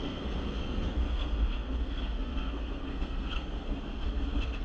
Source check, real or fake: fake